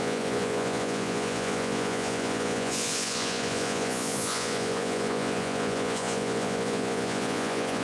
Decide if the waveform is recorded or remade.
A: remade